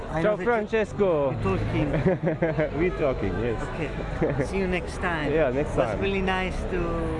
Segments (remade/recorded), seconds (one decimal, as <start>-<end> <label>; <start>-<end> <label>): 0.0-3.0 recorded; 3.0-4.1 remade; 4.1-7.2 recorded